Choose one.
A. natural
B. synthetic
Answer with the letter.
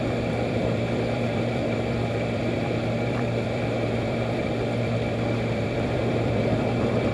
B